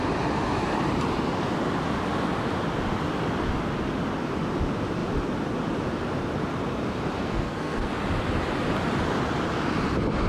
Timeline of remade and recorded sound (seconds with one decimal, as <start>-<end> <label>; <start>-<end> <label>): 0.0-7.2 recorded; 7.2-7.9 remade; 7.9-10.3 recorded